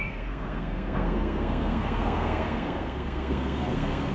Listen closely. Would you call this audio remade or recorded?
remade